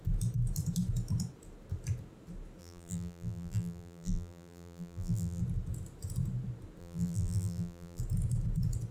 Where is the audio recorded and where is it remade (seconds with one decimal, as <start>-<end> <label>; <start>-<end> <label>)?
0.0-2.6 recorded; 2.6-5.4 remade; 5.4-6.8 recorded; 6.8-8.0 remade; 8.0-8.9 recorded